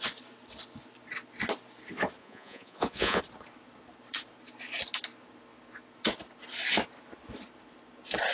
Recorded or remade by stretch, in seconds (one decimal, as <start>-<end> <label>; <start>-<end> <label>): 0.0-2.2 recorded; 2.2-3.2 remade; 3.2-8.3 recorded